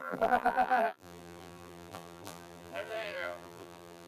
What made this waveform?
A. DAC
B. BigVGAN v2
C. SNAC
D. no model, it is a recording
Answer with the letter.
B